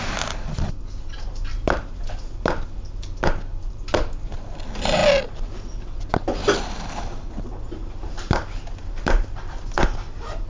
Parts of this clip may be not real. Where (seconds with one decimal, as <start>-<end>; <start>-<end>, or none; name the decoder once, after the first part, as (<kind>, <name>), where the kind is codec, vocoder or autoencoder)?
none